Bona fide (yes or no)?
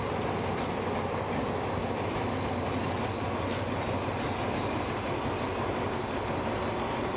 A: yes